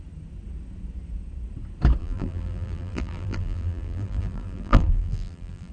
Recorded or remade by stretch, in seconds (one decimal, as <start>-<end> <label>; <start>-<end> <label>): 0.0-2.0 recorded; 2.0-5.7 remade